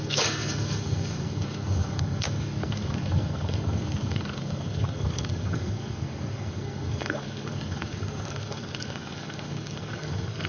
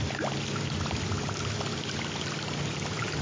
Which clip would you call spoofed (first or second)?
first